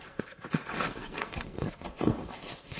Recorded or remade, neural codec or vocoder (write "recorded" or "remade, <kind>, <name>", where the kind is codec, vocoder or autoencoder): remade, codec, SNAC